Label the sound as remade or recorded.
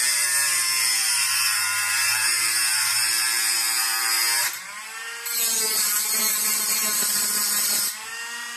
remade